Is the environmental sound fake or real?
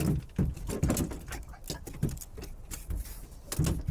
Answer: real